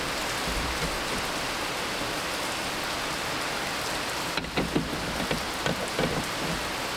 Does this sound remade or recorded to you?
recorded